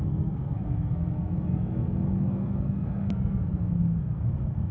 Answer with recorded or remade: remade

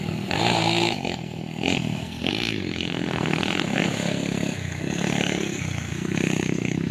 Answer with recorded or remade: remade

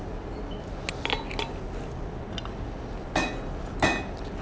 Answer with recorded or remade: recorded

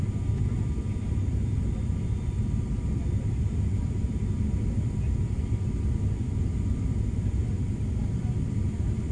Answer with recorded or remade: recorded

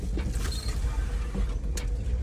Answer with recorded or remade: recorded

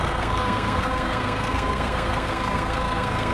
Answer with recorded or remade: remade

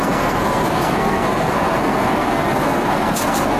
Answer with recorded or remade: remade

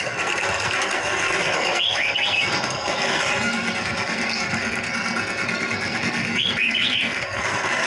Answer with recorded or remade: remade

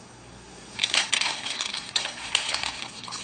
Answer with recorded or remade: remade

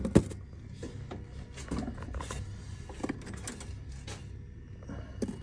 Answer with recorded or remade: recorded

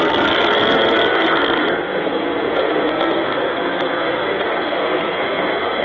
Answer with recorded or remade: remade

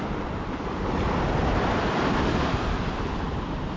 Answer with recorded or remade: recorded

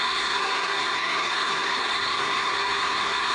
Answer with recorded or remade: remade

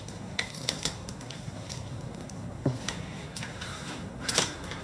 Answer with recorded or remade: remade